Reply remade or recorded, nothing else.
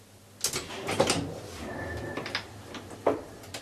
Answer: recorded